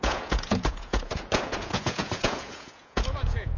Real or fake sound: fake